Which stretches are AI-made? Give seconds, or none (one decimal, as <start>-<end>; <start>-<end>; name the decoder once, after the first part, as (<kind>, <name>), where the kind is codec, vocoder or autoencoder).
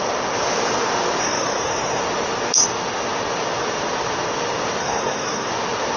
1.2-2.0 (codec, SNAC); 4.8-5.5